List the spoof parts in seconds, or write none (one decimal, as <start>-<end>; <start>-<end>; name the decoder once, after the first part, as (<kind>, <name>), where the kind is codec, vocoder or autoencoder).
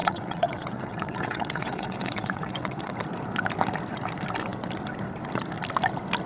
0.0-2.9 (vocoder, WaveNeXt)